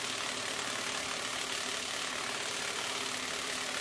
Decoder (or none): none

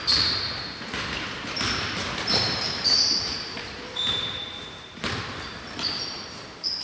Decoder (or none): vocoder, BigVGAN v2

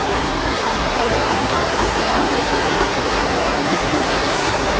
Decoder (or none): codec, SNAC